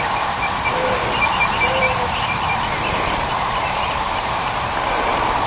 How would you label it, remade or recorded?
remade